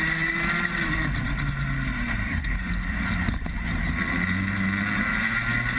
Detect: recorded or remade recorded